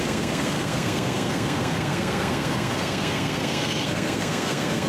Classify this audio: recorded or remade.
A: remade